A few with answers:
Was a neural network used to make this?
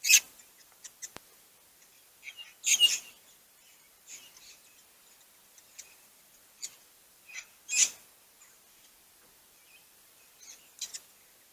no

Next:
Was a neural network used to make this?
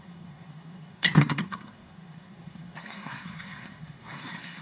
yes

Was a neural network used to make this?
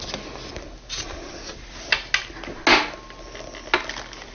no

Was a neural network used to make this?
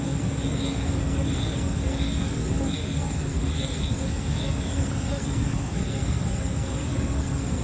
yes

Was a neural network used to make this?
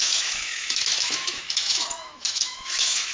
yes